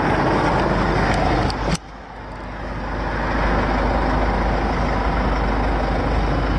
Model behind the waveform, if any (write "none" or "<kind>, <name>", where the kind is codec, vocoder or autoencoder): none